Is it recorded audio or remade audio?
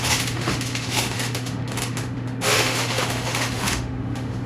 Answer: remade